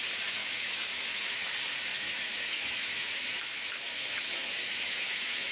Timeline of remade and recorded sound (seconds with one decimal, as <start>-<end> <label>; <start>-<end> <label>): 0.0-0.4 recorded; 0.4-1.5 remade; 1.5-1.9 recorded; 1.9-5.5 remade